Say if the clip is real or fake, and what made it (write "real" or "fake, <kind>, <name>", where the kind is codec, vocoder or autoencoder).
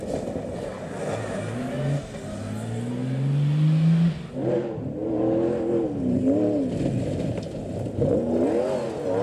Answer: real